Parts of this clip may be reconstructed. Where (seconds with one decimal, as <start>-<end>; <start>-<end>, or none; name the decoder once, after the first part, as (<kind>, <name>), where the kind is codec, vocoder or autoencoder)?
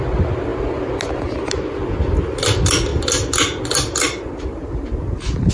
none